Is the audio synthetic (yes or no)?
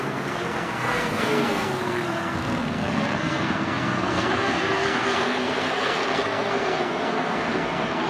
yes